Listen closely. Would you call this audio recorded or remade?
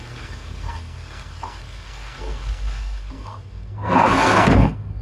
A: remade